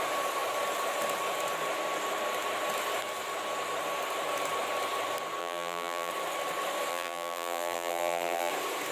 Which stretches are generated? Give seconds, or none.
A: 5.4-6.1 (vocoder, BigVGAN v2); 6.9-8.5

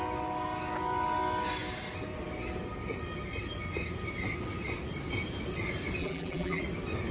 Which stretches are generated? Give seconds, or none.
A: 6.0-6.6 (vocoder, BigVGAN v2)